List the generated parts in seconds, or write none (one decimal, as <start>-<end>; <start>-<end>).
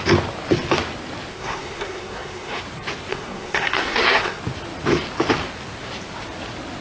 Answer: 1.3-2.6; 3.1-4.4